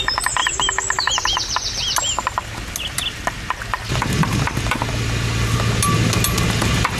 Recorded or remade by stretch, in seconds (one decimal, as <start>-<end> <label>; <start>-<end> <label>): 0.0-7.0 recorded